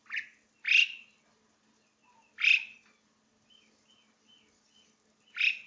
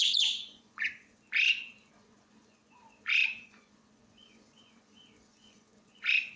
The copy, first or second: second